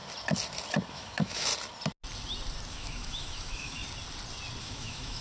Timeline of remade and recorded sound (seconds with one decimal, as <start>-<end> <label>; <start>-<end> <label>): 0.0-0.9 recorded; 0.9-1.5 remade; 1.5-2.7 recorded; 2.7-3.8 remade; 3.8-4.6 recorded; 4.6-5.2 remade